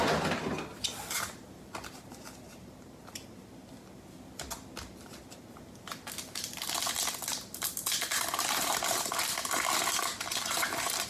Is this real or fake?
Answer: real